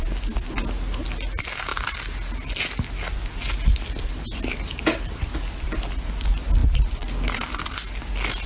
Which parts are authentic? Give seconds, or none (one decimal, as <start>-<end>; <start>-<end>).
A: 0.0-8.5